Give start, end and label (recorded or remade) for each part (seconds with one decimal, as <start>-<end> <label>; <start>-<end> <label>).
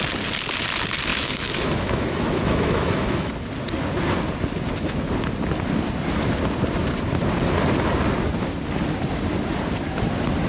0.0-1.1 recorded; 1.1-3.3 remade; 3.3-10.5 recorded